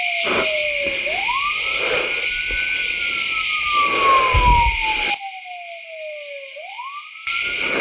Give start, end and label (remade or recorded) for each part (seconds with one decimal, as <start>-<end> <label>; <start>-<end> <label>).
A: 0.0-7.8 recorded